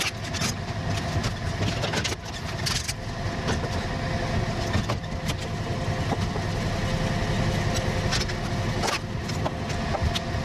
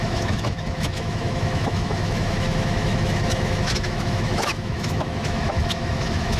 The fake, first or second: second